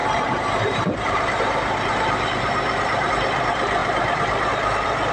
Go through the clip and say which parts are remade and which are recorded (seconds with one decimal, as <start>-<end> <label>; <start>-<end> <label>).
0.0-3.1 remade; 3.1-5.1 recorded